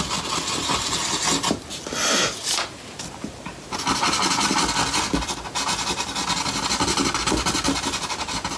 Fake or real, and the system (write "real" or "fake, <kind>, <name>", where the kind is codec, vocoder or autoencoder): real